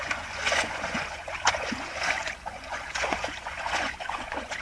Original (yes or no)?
no